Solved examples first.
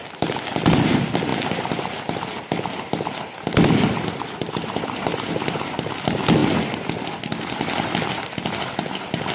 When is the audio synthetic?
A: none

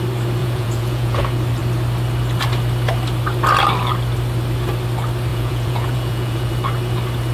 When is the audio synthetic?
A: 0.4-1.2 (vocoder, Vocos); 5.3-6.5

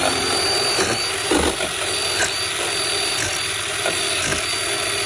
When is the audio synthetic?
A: none

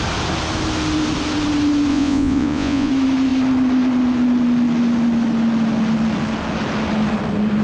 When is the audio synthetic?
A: 1.9-2.9 (vocoder, Vocos)

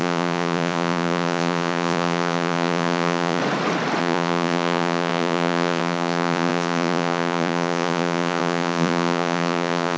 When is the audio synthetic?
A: 0.0-3.4 (vocoder, Vocos); 4.0-10.0